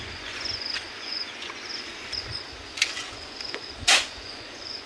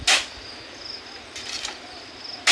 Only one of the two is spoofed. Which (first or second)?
first